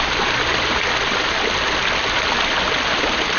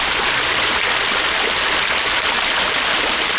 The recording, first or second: second